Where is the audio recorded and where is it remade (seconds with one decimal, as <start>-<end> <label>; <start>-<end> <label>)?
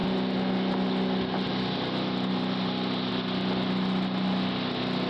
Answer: 0.0-5.1 recorded